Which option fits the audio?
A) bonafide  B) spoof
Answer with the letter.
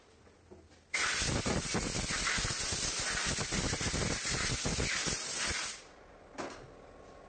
A